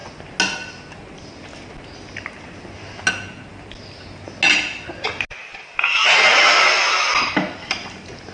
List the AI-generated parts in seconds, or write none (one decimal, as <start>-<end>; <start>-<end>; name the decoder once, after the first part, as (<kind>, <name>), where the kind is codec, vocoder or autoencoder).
none